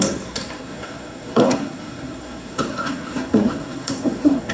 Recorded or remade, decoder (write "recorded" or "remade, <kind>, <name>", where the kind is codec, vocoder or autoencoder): remade, codec, SNAC